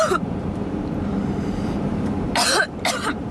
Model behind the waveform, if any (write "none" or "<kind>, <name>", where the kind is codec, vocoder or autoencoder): vocoder, BigVGAN v2